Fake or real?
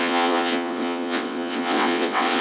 fake